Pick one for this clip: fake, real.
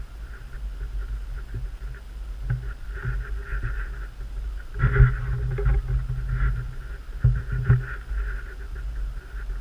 real